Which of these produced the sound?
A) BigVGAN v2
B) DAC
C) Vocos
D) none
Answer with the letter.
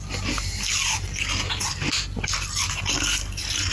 D